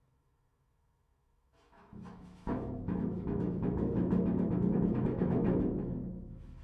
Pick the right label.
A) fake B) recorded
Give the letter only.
A